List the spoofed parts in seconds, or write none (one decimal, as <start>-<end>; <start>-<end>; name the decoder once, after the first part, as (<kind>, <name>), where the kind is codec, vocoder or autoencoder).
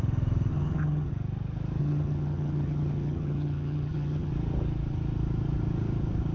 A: 0.5-1.1 (vocoder, HiFi-GAN); 1.8-4.3